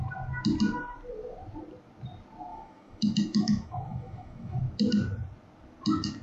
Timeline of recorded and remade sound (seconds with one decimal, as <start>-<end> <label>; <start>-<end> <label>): 0.0-2.5 recorded; 2.5-4.6 remade; 4.6-6.2 recorded